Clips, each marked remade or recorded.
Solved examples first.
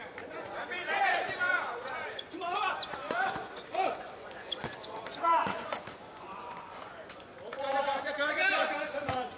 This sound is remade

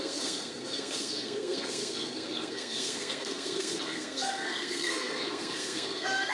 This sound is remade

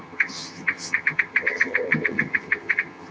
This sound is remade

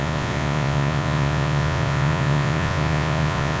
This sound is remade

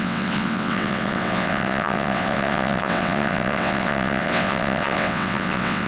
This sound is remade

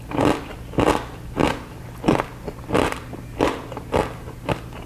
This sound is recorded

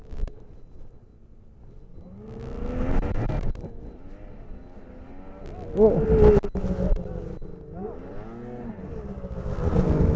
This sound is recorded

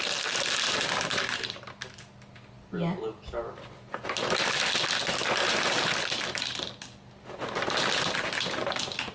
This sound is recorded